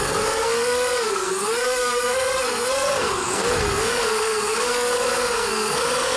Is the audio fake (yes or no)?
yes